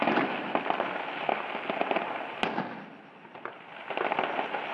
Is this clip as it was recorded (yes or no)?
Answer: yes